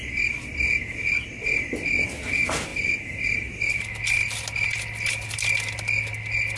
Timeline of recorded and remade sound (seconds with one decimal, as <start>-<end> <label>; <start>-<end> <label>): 0.0-6.6 recorded